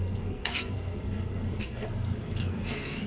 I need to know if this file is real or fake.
fake